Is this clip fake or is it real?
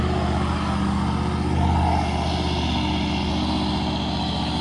real